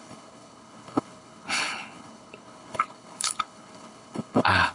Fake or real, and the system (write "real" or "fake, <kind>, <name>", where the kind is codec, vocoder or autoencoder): fake, codec, HILCodec